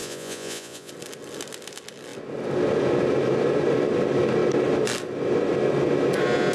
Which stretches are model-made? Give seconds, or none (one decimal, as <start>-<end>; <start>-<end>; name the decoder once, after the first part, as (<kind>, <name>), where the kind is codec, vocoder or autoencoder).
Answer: 0.0-0.9 (vocoder, Vocos)